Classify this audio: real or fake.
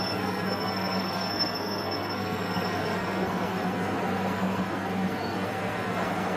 fake